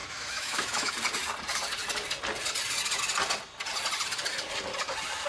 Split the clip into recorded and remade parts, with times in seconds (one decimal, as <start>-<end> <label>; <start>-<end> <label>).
0.0-0.9 remade; 0.9-5.3 recorded